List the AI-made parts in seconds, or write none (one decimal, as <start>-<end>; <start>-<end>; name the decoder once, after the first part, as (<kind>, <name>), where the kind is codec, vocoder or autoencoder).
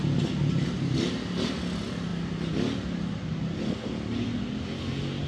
none